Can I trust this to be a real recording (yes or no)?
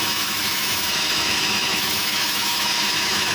no